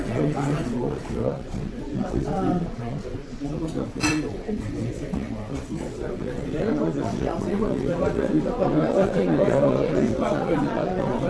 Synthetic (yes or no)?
yes